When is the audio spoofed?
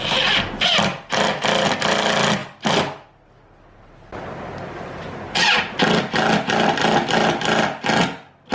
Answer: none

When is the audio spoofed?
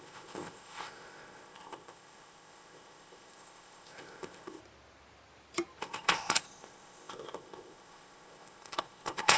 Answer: 0.0-4.6 (codec, ZipCodec); 5.8-9.4